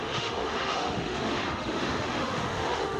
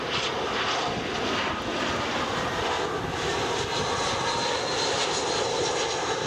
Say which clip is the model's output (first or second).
first